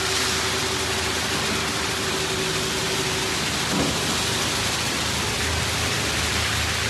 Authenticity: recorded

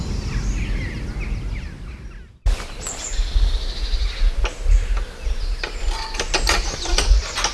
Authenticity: recorded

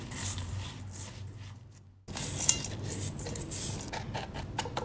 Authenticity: recorded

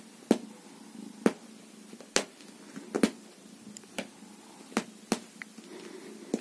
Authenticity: recorded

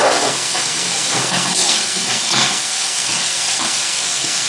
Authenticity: remade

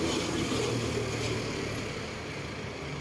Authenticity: recorded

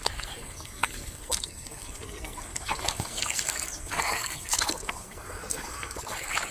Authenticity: remade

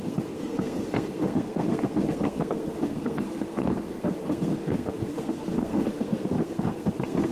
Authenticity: remade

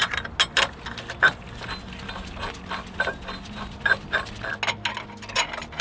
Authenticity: recorded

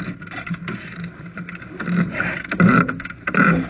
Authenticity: recorded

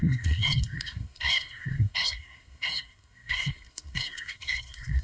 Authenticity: remade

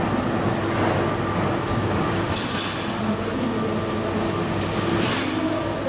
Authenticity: recorded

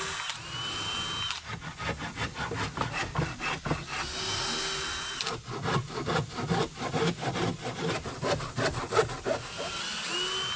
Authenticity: recorded